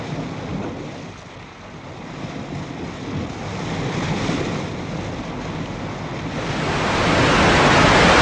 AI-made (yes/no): no